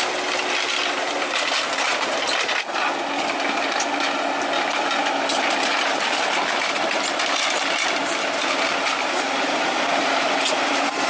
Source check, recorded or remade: recorded